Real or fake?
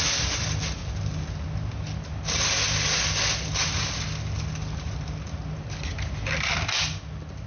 real